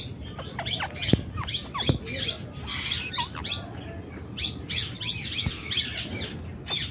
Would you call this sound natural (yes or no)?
yes